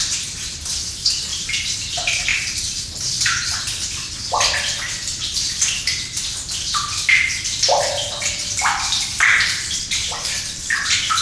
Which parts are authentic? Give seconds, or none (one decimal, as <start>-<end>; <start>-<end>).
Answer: 0.0-1.3; 1.9-2.3; 4.2-5.0; 5.8-8.4; 10.7-11.2